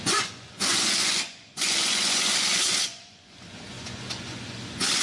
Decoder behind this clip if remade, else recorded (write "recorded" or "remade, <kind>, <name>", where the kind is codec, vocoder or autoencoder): remade, vocoder, Vocos